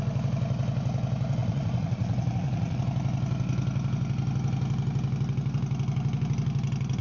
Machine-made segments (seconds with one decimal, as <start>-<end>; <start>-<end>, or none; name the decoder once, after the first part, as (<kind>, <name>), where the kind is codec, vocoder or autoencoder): 1.4-2.8 (vocoder, Vocos)